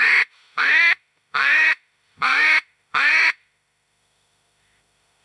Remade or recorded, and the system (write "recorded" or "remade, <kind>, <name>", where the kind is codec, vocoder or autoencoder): remade, autoencoder, DAC-VAE